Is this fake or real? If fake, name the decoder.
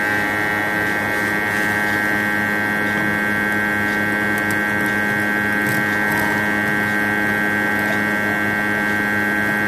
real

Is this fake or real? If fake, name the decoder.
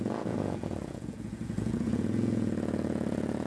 fake, vocoder, Vocos